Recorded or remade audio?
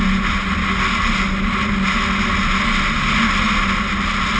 recorded